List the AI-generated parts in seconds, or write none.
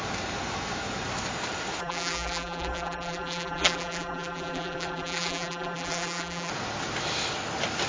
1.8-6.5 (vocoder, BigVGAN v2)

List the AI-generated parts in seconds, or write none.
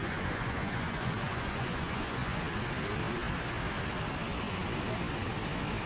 0.0-2.4 (vocoder, Vocos)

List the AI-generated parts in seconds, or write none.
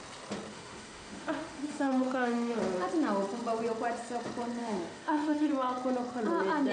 0.5-2.6 (autoencoder, DAC-VAE); 4.6-5.5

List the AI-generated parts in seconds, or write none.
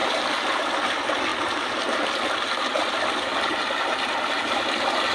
0.0-0.7 (vocoder, BigVGAN v2); 1.3-1.9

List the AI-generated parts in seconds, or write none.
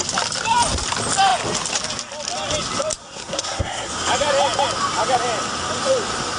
3.0-3.9 (codec, SNAC)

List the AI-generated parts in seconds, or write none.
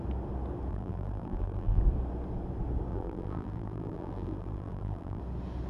0.7-1.8 (vocoder, BigVGAN v2); 2.9-5.2